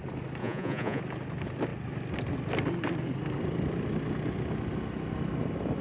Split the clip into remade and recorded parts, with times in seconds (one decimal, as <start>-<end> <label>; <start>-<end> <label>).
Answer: 0.0-0.4 recorded; 0.4-1.0 remade; 1.0-5.8 recorded